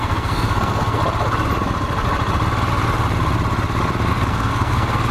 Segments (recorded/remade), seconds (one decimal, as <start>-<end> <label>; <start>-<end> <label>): 0.0-1.0 remade; 1.0-4.1 recorded; 4.1-5.1 remade